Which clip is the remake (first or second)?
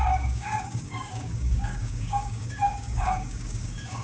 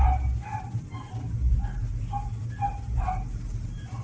first